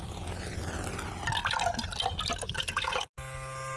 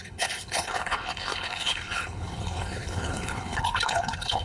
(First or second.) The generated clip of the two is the second